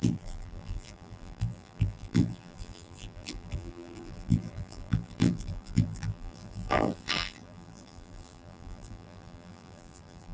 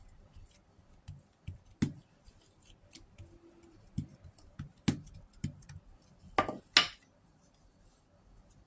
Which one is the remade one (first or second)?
first